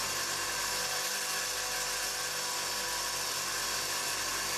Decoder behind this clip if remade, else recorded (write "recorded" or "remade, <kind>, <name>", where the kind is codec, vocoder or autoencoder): recorded